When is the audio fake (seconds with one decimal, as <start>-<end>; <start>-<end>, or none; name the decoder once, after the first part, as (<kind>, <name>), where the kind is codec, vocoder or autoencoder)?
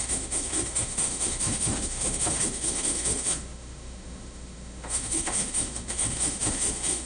0.0-7.1 (autoencoder, DAC-VAE)